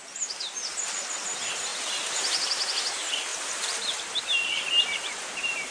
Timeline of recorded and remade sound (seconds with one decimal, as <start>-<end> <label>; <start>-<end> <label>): 0.0-5.7 recorded